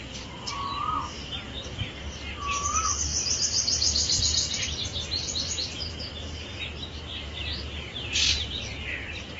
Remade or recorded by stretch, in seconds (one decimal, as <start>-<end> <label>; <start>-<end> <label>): 0.0-7.1 recorded; 7.1-8.6 remade; 8.6-9.4 recorded